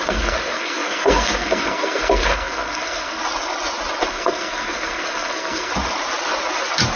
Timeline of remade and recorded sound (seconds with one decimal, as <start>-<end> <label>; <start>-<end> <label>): 0.0-3.2 remade; 3.2-4.1 recorded; 4.1-5.7 remade; 5.7-7.0 recorded